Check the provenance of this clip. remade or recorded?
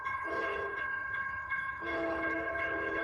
remade